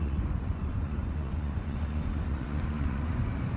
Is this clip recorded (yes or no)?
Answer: no